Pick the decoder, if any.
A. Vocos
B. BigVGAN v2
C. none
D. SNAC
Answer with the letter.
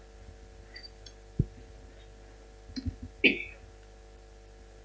C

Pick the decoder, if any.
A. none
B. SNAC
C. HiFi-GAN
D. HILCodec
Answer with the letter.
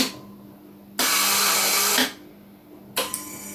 A